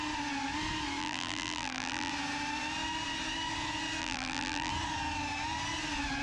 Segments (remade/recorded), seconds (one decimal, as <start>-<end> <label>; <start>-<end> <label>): 0.0-1.0 recorded; 1.0-2.1 remade; 2.1-4.0 recorded; 4.0-4.7 remade; 4.7-6.2 recorded